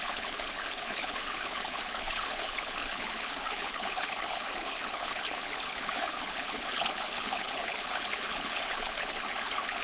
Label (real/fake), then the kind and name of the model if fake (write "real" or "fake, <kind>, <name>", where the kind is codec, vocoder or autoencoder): fake, codec, HILCodec